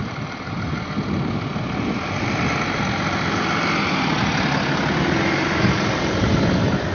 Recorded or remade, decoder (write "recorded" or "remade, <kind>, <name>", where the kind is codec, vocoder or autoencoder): recorded